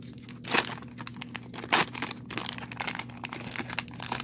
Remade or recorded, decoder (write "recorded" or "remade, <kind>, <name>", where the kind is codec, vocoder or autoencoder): recorded